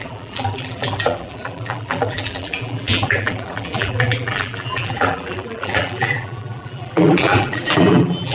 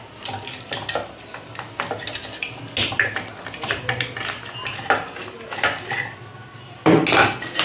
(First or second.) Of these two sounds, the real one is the second